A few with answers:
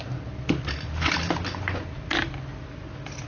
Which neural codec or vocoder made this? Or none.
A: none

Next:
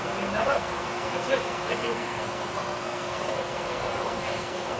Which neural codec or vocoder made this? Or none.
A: codec, SNAC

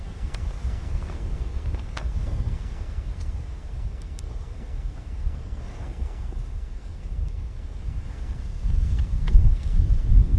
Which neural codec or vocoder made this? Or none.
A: codec, SNAC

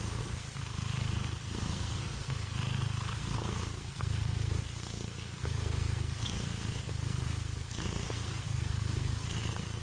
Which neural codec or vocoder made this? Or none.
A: codec, SNAC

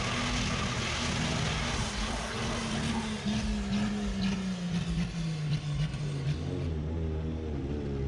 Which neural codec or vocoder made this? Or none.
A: none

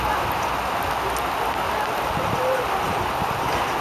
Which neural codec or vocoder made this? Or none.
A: none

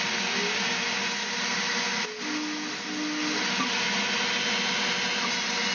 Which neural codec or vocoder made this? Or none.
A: none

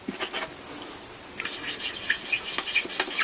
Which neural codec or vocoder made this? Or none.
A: none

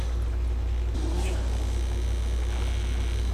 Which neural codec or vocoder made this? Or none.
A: none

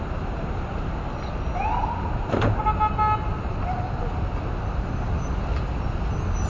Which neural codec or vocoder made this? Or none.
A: none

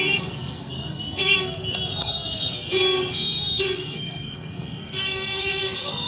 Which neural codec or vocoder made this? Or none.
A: codec, SNAC